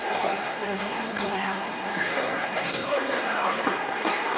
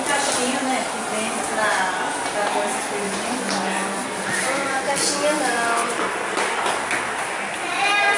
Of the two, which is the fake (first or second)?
first